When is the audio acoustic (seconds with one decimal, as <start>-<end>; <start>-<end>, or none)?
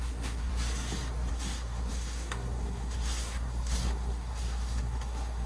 0.5-1.3